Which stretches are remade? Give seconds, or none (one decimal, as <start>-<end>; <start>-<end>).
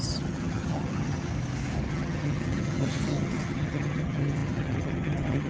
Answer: 0.0-1.3; 1.9-5.5